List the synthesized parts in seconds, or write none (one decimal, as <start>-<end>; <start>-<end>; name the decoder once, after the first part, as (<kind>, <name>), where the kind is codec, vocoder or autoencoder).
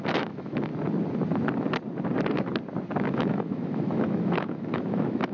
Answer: 0.0-0.7 (autoencoder, DAC-VAE); 3.0-5.3